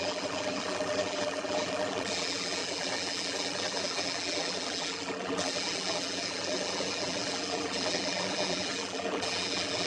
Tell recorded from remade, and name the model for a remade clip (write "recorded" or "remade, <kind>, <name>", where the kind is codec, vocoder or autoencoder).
remade, vocoder, BigVGAN v2